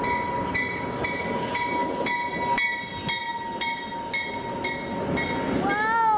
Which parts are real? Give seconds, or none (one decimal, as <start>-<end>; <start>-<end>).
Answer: 0.0-6.2